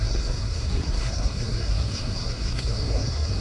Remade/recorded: remade